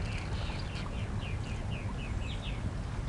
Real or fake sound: real